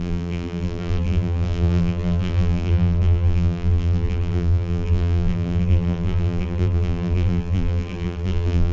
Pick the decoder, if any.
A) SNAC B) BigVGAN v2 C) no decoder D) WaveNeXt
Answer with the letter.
B